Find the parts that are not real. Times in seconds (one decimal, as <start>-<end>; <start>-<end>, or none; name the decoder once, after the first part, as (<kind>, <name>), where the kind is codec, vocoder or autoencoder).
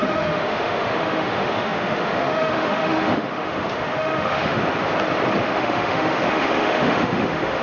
0.0-4.6 (autoencoder, DAC-VAE); 5.4-7.6